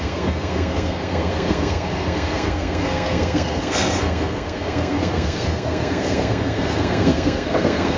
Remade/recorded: remade